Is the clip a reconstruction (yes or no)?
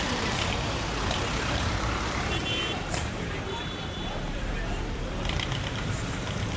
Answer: yes